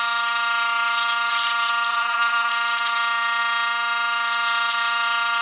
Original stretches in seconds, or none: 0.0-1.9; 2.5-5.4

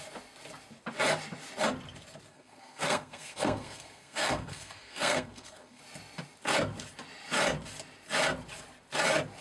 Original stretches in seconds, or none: 0.0-2.3; 5.8-9.4

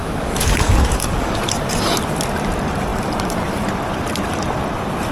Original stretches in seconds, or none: 1.4-5.1

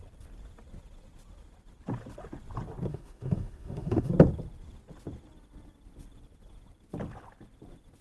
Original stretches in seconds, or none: 0.0-2.9; 4.1-8.0

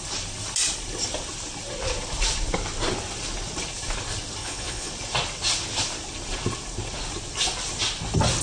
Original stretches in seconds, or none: 0.0-4.4; 4.9-8.4